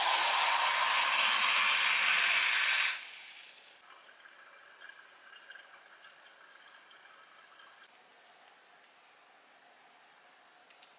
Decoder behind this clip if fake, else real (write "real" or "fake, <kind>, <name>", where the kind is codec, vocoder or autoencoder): real